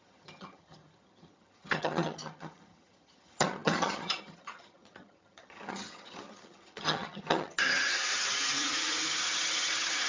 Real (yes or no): no